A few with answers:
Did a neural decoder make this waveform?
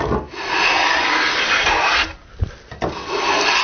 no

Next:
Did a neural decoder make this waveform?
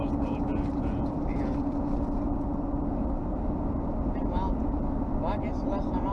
no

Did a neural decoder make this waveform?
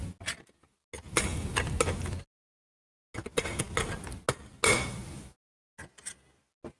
no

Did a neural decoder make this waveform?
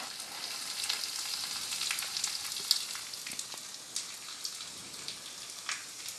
no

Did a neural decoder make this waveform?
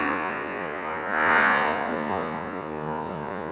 yes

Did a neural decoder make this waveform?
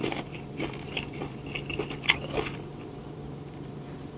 yes